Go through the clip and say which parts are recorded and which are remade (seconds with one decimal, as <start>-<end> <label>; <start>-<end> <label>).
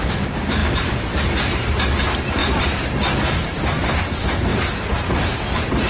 0.0-5.9 recorded